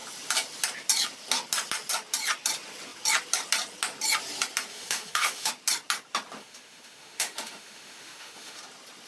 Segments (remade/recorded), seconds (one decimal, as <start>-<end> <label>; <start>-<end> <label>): 0.0-4.7 recorded; 4.7-5.5 remade; 5.5-6.4 recorded; 6.4-8.6 remade; 8.6-9.1 recorded